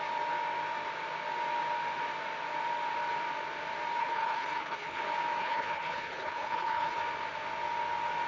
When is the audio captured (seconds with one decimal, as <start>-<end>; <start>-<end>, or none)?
0.0-4.0; 5.0-5.4; 7.0-8.3